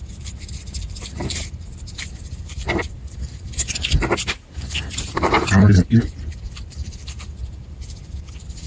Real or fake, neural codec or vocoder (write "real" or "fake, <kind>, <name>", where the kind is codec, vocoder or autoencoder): fake, vocoder, BigVGAN v2